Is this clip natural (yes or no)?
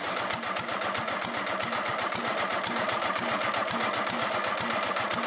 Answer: yes